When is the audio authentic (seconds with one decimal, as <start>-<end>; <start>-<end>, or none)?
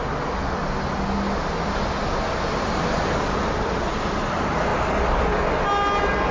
0.0-6.3